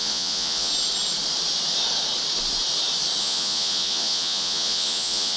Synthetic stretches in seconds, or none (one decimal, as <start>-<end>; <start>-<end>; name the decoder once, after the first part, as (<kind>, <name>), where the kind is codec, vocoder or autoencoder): 0.0-0.7 (vocoder, Vocos); 3.2-5.4

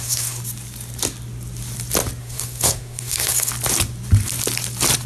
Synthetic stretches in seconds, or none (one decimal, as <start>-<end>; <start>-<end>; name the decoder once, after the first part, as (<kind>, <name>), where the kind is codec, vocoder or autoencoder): 0.0-0.4 (codec, SNAC); 2.2-3.5